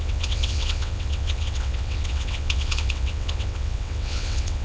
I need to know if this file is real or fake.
fake